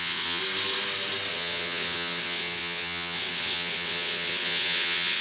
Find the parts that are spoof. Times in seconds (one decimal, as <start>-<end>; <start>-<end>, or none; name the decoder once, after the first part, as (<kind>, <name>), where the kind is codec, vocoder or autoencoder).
0.0-0.4 (vocoder, WaveNeXt); 1.3-5.2